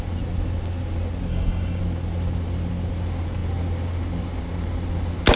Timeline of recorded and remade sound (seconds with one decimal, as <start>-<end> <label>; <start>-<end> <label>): 0.0-1.3 recorded; 1.3-1.8 remade; 1.8-5.4 recorded